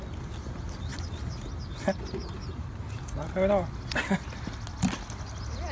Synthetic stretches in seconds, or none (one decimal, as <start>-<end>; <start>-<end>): none